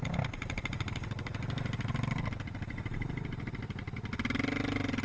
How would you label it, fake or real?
real